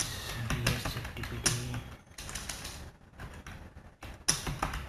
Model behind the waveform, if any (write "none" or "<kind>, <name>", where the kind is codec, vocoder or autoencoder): none